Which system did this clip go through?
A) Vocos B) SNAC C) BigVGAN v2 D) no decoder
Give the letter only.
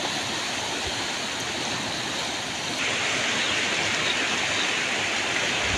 D